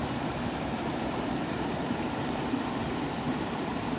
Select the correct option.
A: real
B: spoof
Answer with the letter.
B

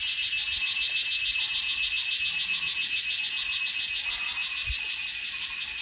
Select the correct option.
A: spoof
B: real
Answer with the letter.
B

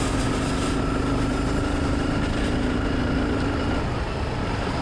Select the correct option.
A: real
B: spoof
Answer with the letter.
A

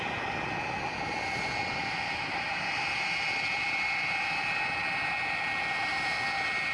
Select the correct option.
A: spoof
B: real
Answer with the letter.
B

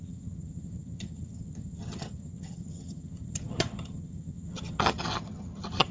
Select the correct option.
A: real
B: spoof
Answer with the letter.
B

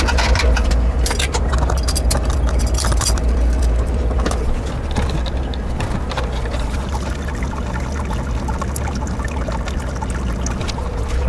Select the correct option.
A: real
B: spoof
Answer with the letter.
A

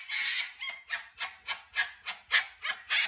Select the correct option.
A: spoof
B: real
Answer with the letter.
B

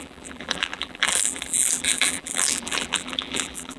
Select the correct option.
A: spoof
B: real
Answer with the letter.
A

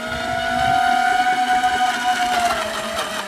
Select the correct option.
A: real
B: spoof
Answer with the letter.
A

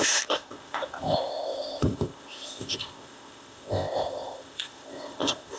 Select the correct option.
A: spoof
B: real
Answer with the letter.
A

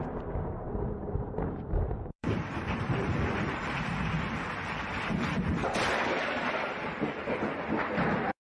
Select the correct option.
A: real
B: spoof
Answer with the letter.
B